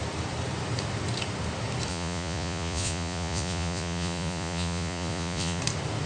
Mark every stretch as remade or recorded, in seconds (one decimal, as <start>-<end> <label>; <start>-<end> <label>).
0.0-1.9 recorded; 1.9-5.6 remade; 5.6-6.1 recorded